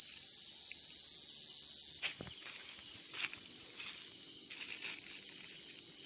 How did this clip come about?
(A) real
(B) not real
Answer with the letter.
A